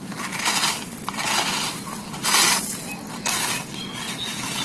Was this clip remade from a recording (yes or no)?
no